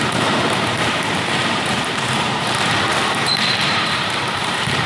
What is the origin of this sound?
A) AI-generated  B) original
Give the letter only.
A